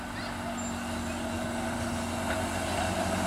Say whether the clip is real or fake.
real